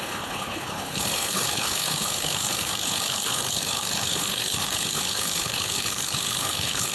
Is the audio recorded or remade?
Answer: remade